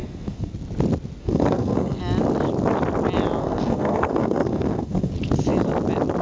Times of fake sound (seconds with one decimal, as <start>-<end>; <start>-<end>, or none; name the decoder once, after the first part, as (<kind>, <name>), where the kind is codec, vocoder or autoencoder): 0.0-0.5 (codec, SNAC); 1.2-2.0; 3.4-5.1